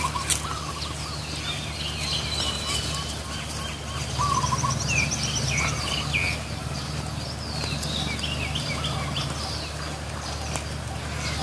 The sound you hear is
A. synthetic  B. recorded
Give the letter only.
B